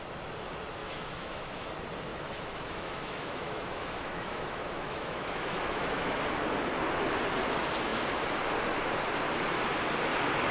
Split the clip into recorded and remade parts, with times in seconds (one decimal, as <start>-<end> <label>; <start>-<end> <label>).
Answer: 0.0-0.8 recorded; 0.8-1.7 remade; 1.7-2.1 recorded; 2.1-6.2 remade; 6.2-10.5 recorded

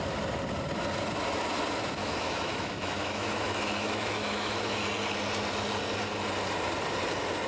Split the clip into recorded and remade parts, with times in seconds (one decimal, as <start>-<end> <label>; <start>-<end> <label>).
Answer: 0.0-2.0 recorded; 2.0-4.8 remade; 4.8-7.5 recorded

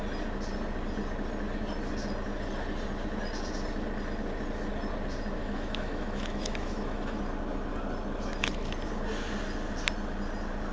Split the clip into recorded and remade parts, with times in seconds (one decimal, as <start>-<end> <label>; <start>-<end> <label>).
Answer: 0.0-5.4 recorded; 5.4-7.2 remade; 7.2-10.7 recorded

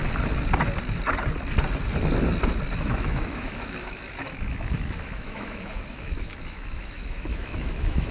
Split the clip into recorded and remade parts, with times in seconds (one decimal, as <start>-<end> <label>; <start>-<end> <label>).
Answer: 0.0-2.8 recorded; 2.8-8.1 remade